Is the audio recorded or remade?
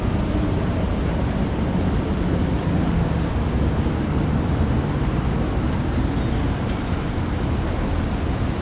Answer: recorded